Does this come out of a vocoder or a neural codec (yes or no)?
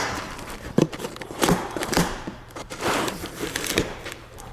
yes